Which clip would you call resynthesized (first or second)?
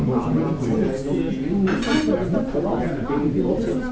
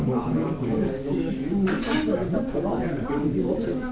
second